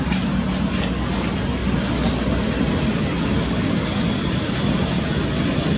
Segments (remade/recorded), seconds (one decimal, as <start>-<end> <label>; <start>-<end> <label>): 0.0-5.8 recorded